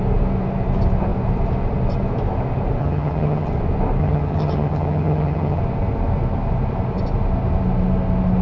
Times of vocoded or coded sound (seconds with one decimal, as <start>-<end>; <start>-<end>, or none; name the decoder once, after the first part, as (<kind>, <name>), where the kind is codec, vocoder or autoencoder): 2.8-3.5 (vocoder, HiFi-GAN); 4.0-5.6

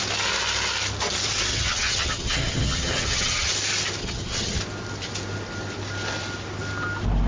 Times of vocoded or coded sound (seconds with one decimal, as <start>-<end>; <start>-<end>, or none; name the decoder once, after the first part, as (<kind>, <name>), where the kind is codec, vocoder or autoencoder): 1.5-3.5 (vocoder, HiFi-GAN); 4.0-4.6

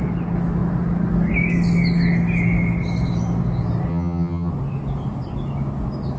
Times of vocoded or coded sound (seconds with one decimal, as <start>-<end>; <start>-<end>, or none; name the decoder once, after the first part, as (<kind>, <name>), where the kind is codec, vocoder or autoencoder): 3.9-4.5 (vocoder, HiFi-GAN)

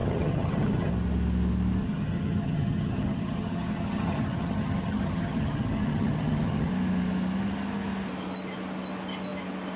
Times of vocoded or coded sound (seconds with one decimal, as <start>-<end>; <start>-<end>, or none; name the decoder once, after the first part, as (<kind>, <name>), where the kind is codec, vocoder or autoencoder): 0.0-0.9 (vocoder, HiFi-GAN); 1.8-6.7

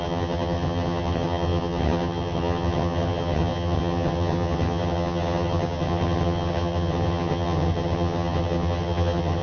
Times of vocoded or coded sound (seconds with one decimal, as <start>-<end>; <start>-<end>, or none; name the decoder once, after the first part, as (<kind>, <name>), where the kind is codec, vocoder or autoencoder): 0.0-9.4 (vocoder, HiFi-GAN)

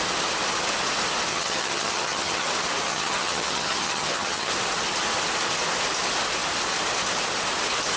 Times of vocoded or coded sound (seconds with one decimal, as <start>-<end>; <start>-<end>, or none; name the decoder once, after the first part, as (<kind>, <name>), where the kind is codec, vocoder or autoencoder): 1.3-2.5 (vocoder, HiFi-GAN); 2.9-4.5